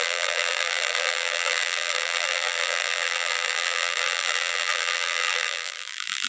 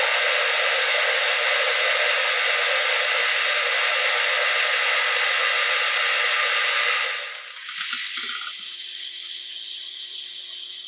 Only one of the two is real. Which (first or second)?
second